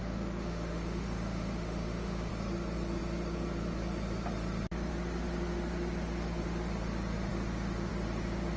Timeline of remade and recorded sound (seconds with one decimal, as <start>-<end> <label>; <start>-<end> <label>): 0.0-2.3 remade; 2.3-8.6 recorded